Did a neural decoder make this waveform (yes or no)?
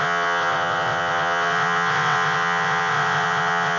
yes